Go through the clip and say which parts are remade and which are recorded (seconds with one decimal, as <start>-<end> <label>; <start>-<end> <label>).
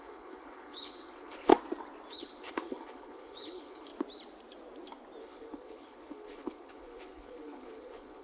0.0-1.5 remade; 1.5-2.1 recorded; 2.1-3.9 remade; 3.9-5.2 recorded; 5.2-8.2 remade